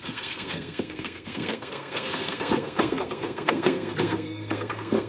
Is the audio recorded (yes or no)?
no